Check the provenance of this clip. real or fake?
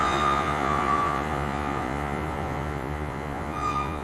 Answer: fake